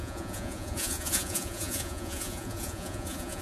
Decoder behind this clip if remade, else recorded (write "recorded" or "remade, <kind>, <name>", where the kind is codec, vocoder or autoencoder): remade, vocoder, Vocos